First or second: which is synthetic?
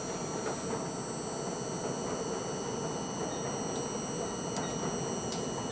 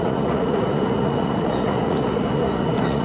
second